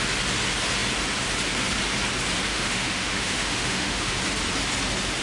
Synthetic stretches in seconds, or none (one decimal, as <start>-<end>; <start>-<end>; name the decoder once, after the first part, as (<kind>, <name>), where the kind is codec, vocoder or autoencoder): 2.5-4.1 (autoencoder, DAC-VAE)